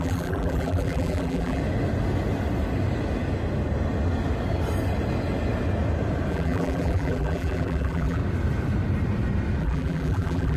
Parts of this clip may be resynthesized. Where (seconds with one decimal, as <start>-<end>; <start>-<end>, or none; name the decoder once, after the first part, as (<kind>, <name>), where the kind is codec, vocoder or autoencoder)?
0.0-1.6 (vocoder, BigVGAN v2); 6.3-8.2; 9.6-10.6